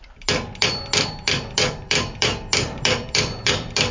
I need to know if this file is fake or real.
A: fake